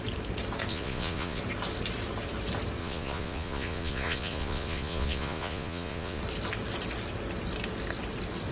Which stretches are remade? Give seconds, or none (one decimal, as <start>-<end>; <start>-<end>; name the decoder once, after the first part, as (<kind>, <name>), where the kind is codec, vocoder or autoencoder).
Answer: 0.7-1.4 (vocoder, Vocos); 2.8-6.2